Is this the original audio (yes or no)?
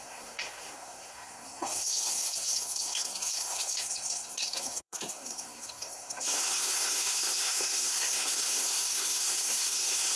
no